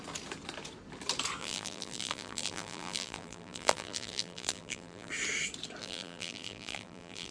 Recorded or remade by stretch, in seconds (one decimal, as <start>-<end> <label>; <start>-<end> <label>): 0.0-1.4 recorded; 1.4-5.1 remade; 5.1-5.8 recorded; 5.8-7.3 remade